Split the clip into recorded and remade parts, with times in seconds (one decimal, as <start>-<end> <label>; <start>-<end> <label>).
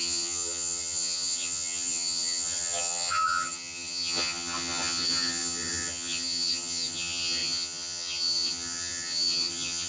0.0-9.9 remade